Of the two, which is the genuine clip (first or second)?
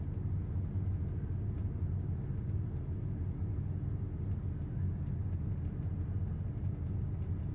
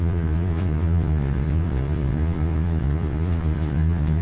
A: first